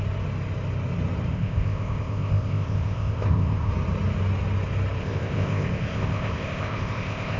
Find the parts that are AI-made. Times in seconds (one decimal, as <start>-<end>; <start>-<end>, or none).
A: 1.3-3.7; 5.0-7.4